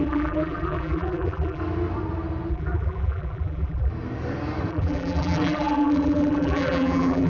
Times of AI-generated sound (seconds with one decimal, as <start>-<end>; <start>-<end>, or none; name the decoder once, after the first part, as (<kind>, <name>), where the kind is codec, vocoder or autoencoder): 0.0-1.6 (vocoder, BigVGAN v2); 2.5-3.9; 4.7-7.3